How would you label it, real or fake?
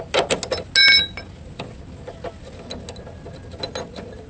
real